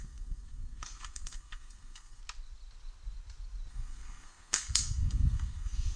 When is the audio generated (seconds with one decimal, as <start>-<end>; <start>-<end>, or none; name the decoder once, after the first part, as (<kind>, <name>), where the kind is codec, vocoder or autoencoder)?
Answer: 0.0-2.2 (codec, SNAC); 3.7-6.0